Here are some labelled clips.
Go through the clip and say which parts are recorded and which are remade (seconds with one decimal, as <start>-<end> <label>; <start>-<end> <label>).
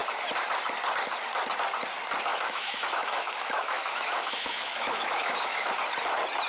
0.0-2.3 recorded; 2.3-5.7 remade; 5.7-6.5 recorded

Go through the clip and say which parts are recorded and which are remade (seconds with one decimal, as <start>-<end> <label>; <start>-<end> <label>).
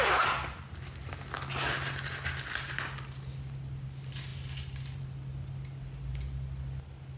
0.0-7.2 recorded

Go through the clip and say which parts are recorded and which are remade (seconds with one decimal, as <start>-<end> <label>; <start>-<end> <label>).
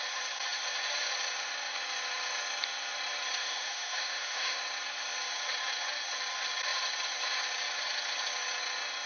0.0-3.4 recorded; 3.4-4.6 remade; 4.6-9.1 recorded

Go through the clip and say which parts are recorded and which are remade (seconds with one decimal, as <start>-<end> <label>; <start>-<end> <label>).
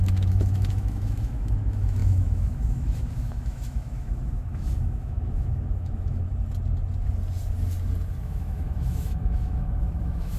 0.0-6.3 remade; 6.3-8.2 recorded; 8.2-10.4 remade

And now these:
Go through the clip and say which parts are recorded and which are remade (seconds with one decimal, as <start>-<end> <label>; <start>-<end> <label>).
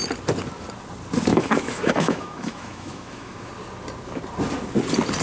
0.0-1.3 recorded; 1.3-3.5 remade; 3.5-5.2 recorded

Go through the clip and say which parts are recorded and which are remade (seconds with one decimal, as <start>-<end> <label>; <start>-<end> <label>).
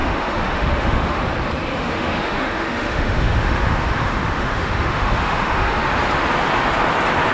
0.0-1.2 remade; 1.2-1.7 recorded; 1.7-5.9 remade; 5.9-7.3 recorded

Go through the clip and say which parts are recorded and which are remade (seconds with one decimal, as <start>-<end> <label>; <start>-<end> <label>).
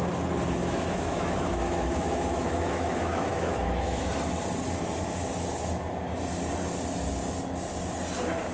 0.0-0.6 recorded; 0.6-4.1 remade; 4.1-8.5 recorded